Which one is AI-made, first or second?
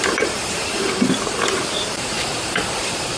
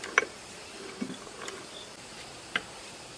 first